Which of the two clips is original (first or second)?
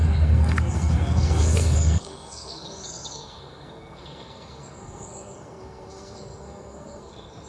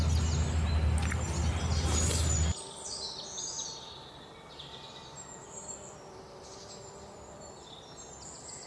second